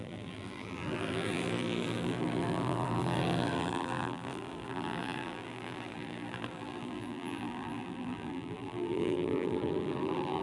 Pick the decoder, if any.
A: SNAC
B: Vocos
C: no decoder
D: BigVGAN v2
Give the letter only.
D